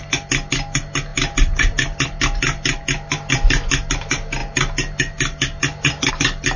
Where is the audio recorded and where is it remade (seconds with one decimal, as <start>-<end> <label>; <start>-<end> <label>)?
0.0-6.6 recorded